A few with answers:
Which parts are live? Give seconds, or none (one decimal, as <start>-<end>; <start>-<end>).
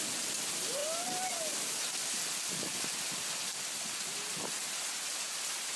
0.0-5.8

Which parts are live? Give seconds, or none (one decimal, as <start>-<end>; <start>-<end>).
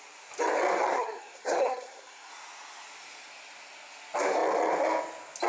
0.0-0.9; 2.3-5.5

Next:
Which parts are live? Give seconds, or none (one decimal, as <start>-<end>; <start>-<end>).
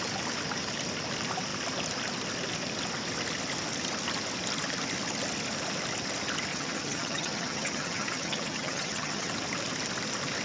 0.0-6.5; 9.3-10.4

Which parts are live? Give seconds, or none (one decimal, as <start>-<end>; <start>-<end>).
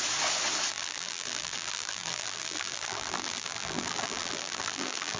0.0-0.7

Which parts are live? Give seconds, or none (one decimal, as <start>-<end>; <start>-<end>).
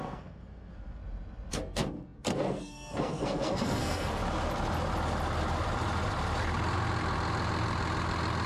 1.0-1.5; 4.2-8.5